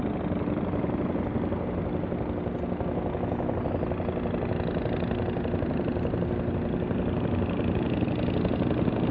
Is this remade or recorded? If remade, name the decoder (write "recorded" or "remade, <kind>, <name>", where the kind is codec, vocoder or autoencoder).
recorded